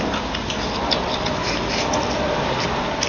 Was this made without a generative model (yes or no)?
yes